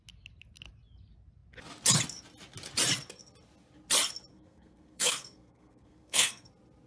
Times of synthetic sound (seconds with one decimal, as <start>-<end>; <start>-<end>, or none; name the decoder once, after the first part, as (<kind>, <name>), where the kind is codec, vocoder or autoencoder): 4.3-6.5 (codec, SNAC)